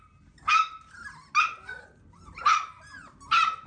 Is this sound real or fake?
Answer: real